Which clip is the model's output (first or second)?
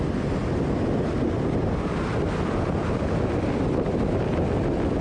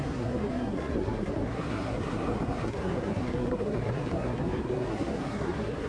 second